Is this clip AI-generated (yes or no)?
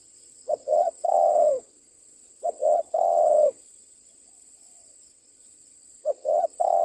yes